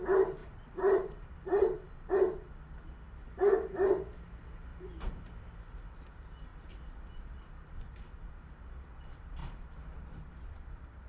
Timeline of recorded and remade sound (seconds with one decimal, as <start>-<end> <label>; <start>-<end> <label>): 0.0-0.4 recorded; 0.4-2.1 remade; 2.1-4.7 recorded; 4.7-5.4 remade; 5.4-6.5 recorded; 6.5-7.0 remade; 7.0-9.4 recorded; 9.4-11.1 remade